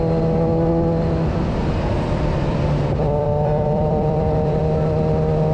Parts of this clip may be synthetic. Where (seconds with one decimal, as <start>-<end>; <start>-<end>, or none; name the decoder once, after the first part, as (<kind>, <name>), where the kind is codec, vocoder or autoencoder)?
1.6-4.6 (vocoder, BigVGAN v2)